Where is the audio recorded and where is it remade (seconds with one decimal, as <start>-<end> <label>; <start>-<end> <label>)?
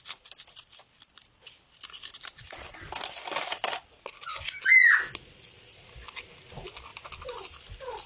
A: 0.0-8.1 recorded